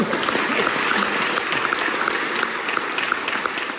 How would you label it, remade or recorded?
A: recorded